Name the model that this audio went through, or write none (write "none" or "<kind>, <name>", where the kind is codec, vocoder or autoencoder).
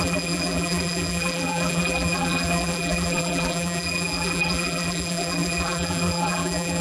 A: vocoder, BigVGAN v2